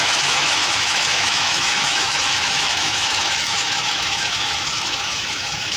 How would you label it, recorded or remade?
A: remade